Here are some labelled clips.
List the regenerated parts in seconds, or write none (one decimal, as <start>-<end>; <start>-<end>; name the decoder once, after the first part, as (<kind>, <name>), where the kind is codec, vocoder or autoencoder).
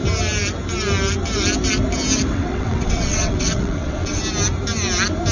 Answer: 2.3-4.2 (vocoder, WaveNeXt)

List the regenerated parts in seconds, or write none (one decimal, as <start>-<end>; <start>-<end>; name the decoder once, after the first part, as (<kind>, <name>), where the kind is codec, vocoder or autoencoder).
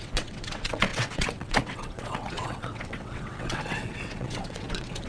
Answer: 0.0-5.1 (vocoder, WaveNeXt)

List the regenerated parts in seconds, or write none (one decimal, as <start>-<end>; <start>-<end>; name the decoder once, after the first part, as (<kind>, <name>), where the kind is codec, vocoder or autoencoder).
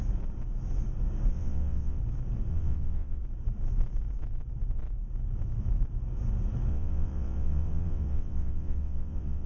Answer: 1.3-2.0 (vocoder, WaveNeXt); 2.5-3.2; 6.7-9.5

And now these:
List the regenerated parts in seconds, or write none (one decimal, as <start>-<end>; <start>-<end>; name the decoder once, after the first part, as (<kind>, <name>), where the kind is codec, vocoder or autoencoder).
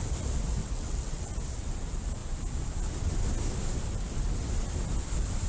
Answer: 0.6-1.3 (vocoder, WaveNeXt)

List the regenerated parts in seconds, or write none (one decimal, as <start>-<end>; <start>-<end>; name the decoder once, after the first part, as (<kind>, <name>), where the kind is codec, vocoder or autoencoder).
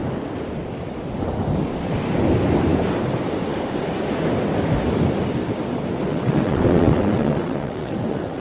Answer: 6.1-8.4 (vocoder, WaveNeXt)